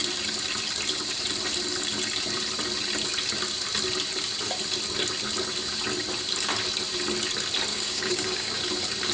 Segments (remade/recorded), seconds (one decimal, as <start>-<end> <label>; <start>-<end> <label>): 0.0-7.7 recorded; 7.7-8.6 remade; 8.6-9.1 recorded